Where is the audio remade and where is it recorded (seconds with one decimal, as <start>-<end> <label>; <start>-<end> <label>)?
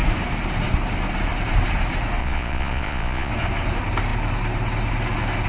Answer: 0.0-2.2 recorded; 2.2-3.3 remade; 3.3-5.5 recorded